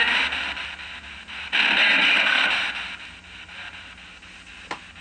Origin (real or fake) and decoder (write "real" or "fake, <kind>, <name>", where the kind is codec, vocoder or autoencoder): real